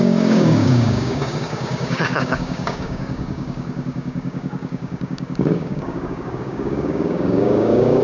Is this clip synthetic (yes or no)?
yes